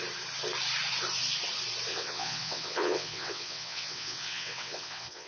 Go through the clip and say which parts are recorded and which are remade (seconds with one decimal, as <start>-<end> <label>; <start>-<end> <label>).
0.0-1.9 recorded; 1.9-5.3 remade